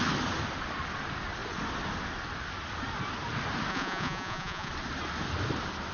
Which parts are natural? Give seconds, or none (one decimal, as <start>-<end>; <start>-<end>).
0.0-3.7; 4.7-5.9